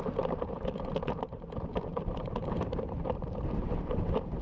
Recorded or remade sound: remade